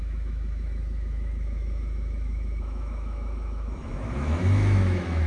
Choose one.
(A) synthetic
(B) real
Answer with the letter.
A